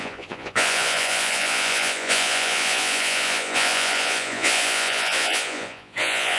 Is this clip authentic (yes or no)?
no